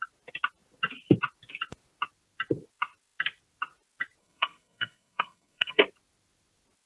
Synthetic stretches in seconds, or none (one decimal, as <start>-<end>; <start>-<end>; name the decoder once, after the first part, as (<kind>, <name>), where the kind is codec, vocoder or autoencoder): 4.2-5.8 (codec, SNAC)

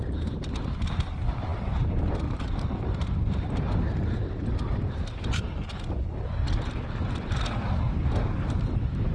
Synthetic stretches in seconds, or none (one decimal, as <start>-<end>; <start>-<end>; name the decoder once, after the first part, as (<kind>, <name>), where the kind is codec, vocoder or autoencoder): none